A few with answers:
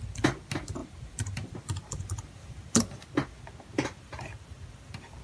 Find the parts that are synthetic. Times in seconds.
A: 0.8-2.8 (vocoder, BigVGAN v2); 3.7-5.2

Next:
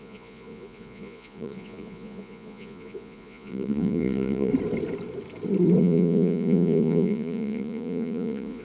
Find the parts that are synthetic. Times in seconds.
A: 0.0-4.5 (vocoder, Vocos); 5.8-8.6

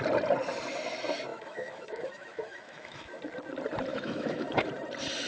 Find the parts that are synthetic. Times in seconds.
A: 1.3-3.2 (autoencoder, DAC-VAE); 3.9-4.7